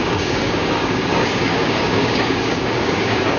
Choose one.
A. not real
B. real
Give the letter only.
A